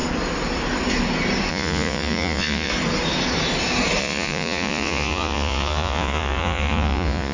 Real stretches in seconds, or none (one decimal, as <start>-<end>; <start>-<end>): 0.0-1.5; 2.7-4.0

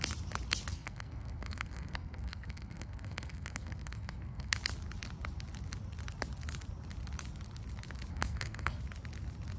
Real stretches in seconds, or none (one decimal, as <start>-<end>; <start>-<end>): 0.0-0.7; 4.6-8.1; 8.8-9.6

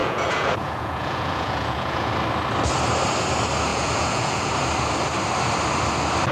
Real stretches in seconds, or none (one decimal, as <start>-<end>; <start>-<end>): 2.1-3.7; 4.5-6.3

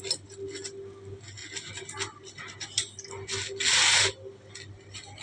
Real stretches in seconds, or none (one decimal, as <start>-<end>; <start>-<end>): 0.0-5.2

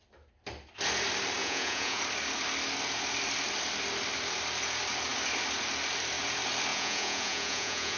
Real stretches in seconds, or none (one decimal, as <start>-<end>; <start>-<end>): 0.0-1.4; 2.0-6.7

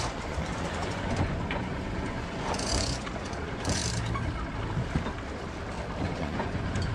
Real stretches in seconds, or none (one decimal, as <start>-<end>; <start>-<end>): 3.8-6.0